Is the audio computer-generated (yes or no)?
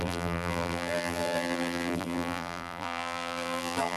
yes